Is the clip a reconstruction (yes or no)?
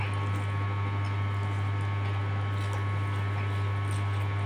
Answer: no